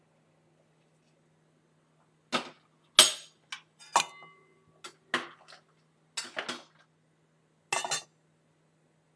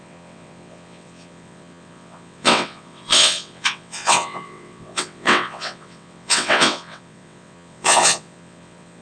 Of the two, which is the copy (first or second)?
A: second